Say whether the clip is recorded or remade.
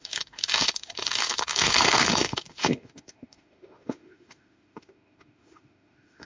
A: remade